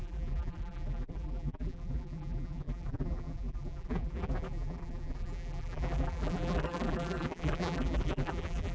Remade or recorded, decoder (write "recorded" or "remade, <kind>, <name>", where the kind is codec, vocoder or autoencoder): remade, vocoder, BigVGAN v2